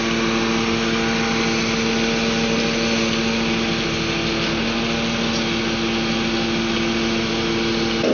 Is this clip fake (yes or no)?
no